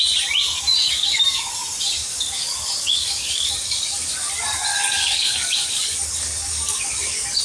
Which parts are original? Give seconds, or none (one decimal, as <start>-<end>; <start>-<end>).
0.0-0.8; 1.5-2.0; 4.3-4.7